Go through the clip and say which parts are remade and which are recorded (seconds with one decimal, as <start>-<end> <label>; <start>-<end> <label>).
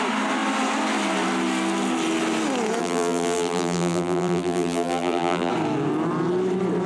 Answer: 0.0-2.8 recorded; 2.8-5.5 remade; 5.5-6.9 recorded